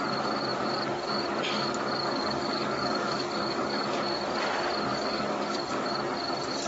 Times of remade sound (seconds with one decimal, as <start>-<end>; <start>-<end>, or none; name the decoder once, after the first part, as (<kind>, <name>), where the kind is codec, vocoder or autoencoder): 2.0-4.0 (codec, DAC); 4.9-5.9

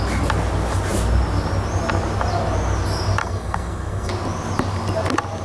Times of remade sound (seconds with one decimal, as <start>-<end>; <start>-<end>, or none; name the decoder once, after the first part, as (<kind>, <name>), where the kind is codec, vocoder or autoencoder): 3.2-4.1 (codec, SNAC)

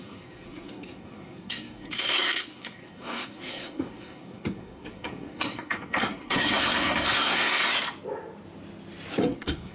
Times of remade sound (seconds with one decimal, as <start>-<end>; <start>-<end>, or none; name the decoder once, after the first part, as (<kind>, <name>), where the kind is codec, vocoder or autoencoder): 0.0-7.6 (codec, SNAC); 9.2-9.7

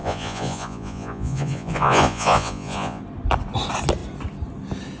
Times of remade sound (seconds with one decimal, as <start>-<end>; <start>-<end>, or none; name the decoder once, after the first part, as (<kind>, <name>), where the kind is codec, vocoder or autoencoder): 0.0-3.0 (vocoder, Vocos)

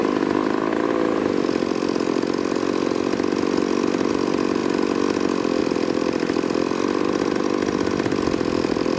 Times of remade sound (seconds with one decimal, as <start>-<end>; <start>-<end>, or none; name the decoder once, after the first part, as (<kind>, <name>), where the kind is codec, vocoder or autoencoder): 4.1-4.6 (vocoder, BigVGAN v2); 5.6-9.0

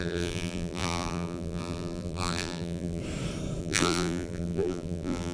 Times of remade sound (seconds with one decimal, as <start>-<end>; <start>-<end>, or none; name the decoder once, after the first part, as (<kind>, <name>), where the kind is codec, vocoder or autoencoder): 0.0-3.0 (vocoder, BigVGAN v2); 3.6-5.3